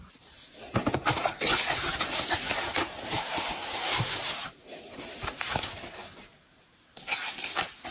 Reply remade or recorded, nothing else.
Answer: remade